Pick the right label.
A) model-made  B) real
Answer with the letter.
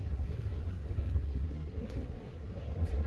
A